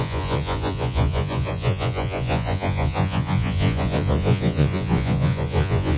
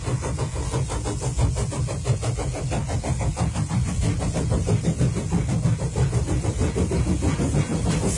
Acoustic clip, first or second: second